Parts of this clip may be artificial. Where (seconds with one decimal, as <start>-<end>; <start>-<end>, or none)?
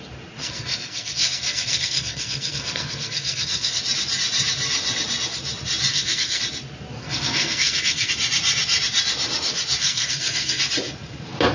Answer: 0.4-3.8; 5.9-6.4; 7.0-8.1; 9.8-10.6